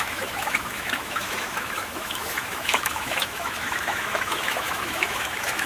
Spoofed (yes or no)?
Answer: yes